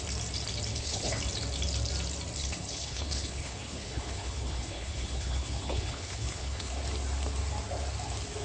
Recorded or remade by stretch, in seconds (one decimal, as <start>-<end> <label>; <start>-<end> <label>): 0.0-0.7 recorded; 0.7-1.2 remade; 1.2-2.4 recorded; 2.4-6.7 remade; 6.7-8.4 recorded